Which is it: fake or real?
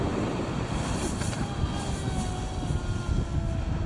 real